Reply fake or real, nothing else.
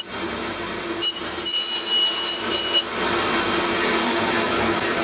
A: real